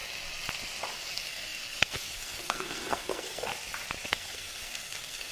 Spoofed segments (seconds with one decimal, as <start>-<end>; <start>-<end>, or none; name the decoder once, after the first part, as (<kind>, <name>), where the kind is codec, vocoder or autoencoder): 0.9-3.5 (codec, SNAC); 4.1-5.3